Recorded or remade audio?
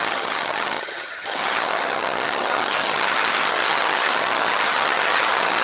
remade